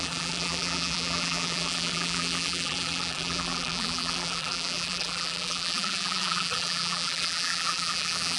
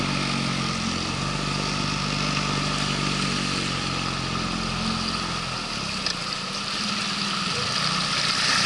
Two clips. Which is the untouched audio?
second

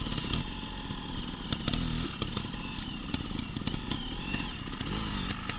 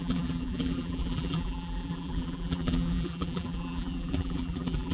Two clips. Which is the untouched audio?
first